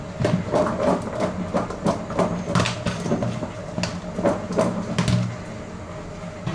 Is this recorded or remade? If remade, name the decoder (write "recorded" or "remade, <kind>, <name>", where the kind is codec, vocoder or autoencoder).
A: recorded